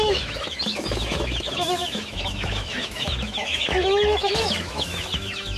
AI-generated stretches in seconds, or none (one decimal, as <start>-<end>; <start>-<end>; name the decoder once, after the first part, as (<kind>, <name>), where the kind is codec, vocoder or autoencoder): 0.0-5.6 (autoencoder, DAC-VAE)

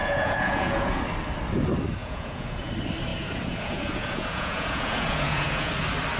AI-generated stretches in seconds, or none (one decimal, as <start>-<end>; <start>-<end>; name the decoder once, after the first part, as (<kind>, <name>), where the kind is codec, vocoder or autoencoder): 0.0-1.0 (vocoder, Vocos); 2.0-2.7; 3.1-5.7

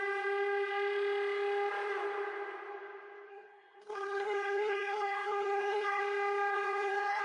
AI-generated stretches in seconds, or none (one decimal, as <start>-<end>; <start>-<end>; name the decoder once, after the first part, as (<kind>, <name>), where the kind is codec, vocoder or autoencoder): 3.3-6.0 (codec, SNAC); 6.5-7.2